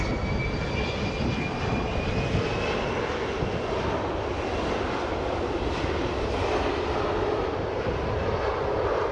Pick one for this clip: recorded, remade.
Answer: recorded